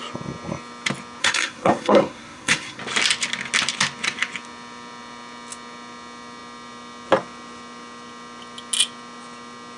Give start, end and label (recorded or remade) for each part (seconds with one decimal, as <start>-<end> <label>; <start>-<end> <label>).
0.0-1.2 recorded; 1.2-2.8 remade; 2.8-9.8 recorded